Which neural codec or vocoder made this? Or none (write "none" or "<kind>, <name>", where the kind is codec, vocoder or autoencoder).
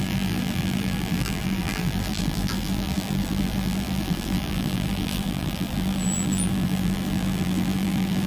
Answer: vocoder, BigVGAN v2